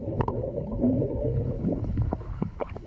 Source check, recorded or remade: remade